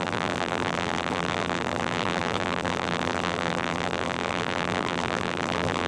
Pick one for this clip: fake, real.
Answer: fake